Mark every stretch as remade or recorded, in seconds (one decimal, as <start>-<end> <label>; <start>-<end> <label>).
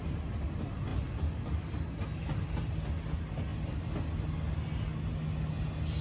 0.0-3.5 recorded; 3.5-4.0 remade; 4.0-6.0 recorded